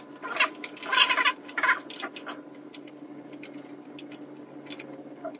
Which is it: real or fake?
real